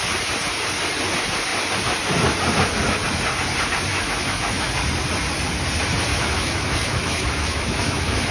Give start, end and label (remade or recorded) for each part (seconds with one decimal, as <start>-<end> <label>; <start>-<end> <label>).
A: 0.0-3.9 recorded; 3.9-4.7 remade; 4.7-6.1 recorded; 6.1-8.3 remade